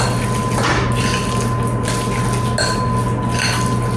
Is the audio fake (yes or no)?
no